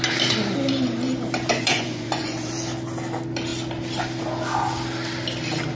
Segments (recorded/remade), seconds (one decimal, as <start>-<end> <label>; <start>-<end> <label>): 0.0-1.5 recorded; 1.5-2.5 remade; 2.5-5.7 recorded